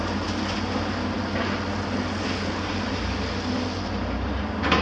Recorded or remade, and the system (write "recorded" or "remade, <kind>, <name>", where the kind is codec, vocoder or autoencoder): recorded